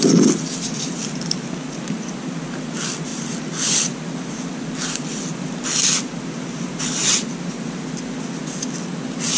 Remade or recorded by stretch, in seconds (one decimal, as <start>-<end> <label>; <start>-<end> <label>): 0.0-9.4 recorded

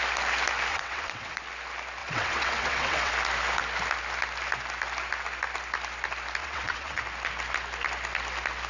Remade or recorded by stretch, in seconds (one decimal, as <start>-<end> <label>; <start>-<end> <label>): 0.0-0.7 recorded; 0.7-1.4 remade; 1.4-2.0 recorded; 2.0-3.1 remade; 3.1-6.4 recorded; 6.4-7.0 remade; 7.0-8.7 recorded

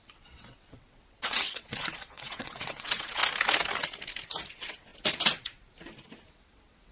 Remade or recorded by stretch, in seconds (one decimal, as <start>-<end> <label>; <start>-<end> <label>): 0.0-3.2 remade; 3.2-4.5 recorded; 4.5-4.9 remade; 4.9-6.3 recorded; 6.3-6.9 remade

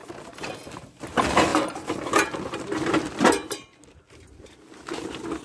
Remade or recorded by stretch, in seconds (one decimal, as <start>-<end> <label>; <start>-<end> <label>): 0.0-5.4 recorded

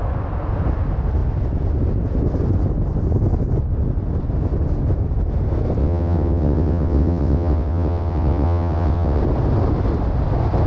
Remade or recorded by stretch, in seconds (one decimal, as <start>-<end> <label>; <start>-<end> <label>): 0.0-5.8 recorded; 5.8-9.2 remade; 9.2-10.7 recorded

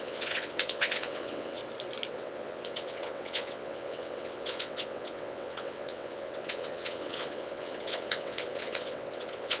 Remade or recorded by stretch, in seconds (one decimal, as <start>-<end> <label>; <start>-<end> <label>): 0.0-1.6 remade; 1.6-2.1 recorded; 2.1-9.6 remade